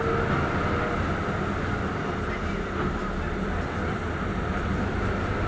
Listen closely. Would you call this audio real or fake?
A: real